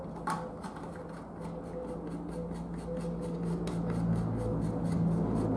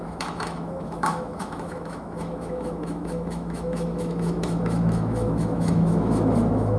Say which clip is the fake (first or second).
second